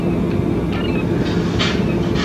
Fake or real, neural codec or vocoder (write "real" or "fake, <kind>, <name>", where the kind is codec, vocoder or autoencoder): real